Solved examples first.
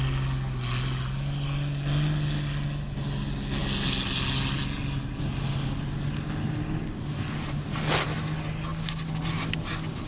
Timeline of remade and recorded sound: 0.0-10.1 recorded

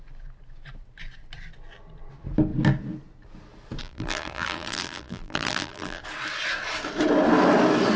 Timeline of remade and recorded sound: 0.0-3.8 recorded; 3.8-6.0 remade; 6.0-8.0 recorded

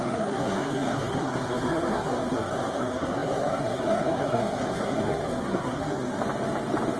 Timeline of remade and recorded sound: 0.0-6.2 remade; 6.2-7.0 recorded

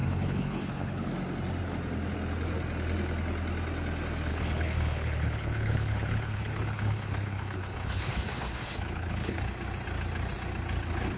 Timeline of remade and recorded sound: 0.0-1.1 remade; 1.1-4.3 recorded; 4.3-9.4 remade; 9.4-11.2 recorded

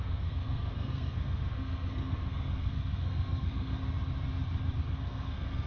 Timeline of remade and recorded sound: 0.0-3.8 remade; 3.8-4.8 recorded; 4.8-5.7 remade

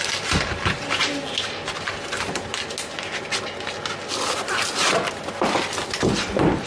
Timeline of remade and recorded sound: 0.0-6.7 recorded

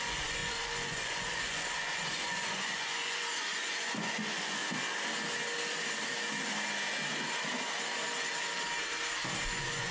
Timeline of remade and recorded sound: 0.0-4.6 remade; 4.6-9.5 recorded; 9.5-9.9 remade

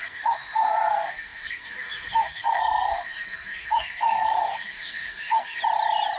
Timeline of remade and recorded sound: 0.0-5.6 remade; 5.6-6.2 recorded